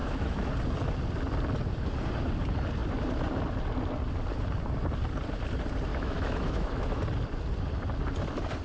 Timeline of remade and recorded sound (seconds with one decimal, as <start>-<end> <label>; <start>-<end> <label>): 0.0-0.5 remade; 0.5-5.9 recorded; 5.9-7.0 remade; 7.0-8.6 recorded